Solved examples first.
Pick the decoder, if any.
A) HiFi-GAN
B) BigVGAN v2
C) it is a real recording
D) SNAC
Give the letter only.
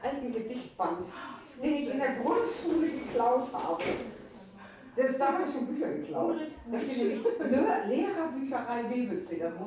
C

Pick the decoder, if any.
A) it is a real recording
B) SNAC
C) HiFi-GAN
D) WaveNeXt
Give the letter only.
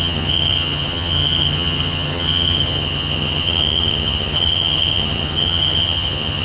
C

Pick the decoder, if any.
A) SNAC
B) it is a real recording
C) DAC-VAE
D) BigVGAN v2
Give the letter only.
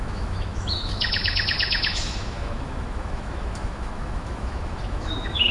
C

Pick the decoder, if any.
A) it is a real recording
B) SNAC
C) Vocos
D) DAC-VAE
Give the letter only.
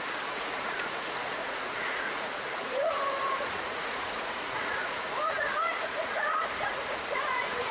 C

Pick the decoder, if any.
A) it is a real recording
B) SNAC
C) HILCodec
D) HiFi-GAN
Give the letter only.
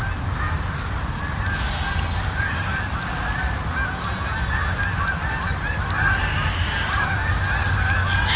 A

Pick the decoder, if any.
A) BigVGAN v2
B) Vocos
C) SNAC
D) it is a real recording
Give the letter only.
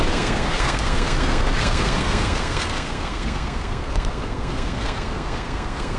C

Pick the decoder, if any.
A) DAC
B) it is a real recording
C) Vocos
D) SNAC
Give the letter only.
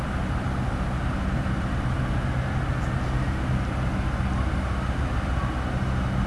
B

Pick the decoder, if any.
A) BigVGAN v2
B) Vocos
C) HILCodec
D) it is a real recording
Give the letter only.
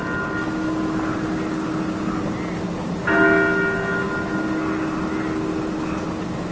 D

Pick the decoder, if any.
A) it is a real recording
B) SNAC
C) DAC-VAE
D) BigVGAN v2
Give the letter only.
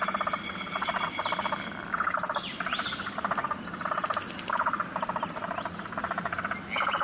A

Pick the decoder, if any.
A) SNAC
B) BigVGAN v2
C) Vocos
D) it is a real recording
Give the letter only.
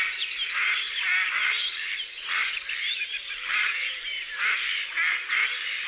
B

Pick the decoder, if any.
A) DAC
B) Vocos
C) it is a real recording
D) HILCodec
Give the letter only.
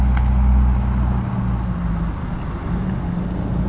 C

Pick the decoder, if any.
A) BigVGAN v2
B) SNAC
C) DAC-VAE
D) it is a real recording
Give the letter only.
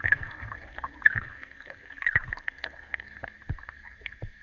B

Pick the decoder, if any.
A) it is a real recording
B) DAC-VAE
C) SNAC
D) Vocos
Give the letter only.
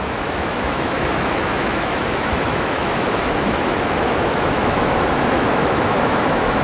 B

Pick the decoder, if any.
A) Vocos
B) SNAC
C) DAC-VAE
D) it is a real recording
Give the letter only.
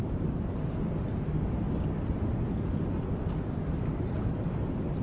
D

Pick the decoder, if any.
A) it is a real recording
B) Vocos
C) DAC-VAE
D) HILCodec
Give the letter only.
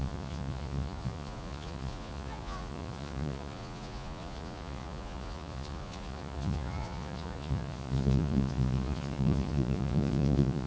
B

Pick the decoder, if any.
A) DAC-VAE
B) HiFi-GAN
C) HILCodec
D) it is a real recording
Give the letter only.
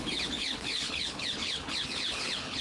C